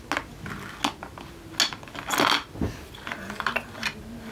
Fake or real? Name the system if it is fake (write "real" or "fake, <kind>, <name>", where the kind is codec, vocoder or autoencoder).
real